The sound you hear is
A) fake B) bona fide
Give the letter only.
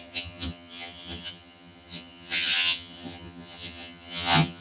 A